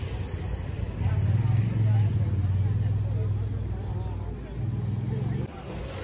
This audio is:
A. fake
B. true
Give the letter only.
B